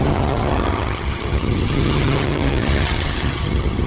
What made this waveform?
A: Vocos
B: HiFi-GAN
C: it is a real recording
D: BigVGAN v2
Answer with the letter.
B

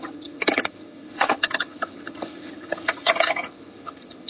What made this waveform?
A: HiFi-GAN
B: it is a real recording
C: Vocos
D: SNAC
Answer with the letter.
A